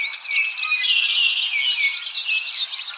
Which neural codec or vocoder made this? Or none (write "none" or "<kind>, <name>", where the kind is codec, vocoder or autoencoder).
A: none